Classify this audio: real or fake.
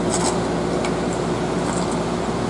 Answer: real